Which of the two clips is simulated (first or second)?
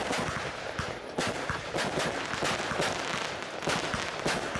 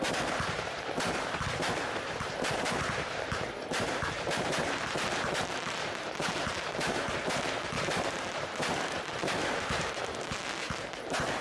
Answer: second